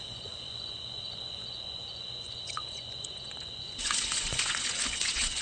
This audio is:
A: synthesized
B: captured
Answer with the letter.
A